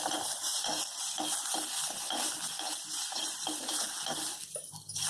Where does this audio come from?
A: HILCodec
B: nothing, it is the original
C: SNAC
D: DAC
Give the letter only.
B